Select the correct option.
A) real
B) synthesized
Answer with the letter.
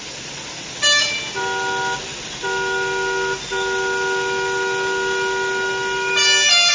A